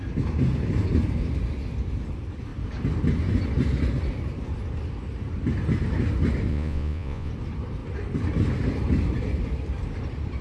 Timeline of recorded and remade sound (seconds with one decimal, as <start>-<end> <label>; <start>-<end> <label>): 0.0-6.5 recorded; 6.5-7.3 remade; 7.3-10.4 recorded